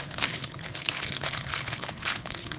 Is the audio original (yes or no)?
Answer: no